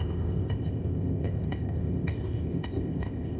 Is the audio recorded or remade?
remade